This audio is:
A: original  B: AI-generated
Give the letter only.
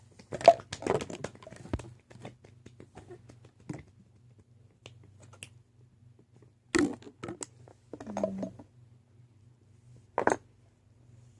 A